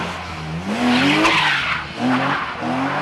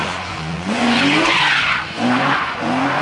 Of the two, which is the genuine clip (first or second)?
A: first